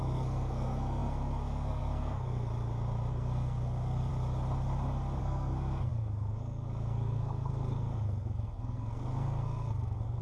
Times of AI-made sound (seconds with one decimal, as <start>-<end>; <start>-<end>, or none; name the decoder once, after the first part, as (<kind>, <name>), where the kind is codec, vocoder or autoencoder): 0.0-2.5 (codec, SNAC); 3.1-4.1; 5.2-10.2